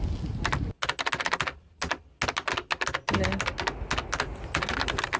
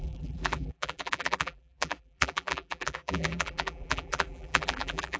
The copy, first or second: second